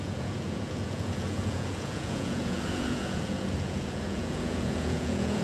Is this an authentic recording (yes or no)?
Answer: no